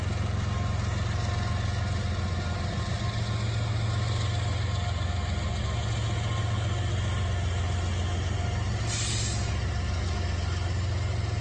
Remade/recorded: recorded